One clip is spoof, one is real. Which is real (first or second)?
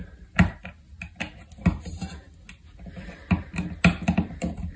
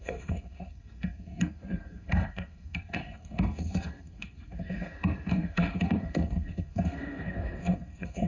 first